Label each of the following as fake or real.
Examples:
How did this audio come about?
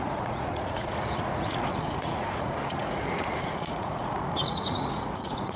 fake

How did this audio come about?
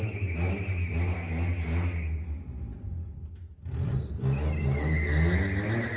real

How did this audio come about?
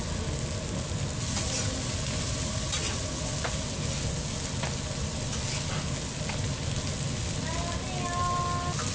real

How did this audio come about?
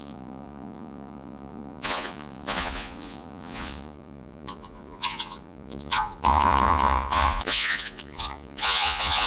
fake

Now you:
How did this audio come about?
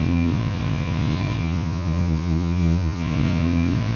fake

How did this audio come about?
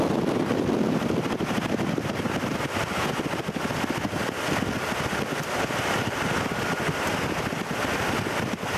real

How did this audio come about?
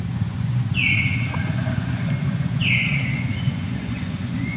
fake